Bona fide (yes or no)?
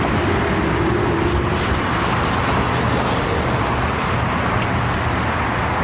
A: yes